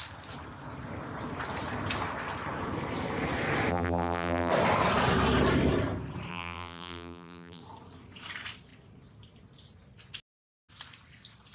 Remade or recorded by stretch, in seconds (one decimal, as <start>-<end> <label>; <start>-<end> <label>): 0.0-3.7 recorded; 3.7-4.5 remade; 4.5-6.3 recorded; 6.3-7.6 remade; 7.6-11.5 recorded